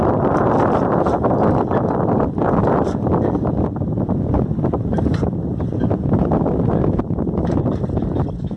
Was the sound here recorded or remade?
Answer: recorded